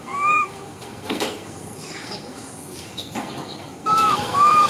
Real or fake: fake